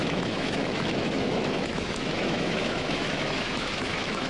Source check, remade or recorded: remade